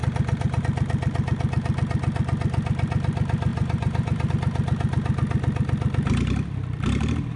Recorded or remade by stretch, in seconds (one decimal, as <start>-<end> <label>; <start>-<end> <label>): 0.0-0.6 remade; 0.6-3.5 recorded; 3.5-4.3 remade; 4.3-7.4 recorded